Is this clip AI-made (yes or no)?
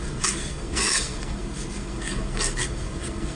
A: yes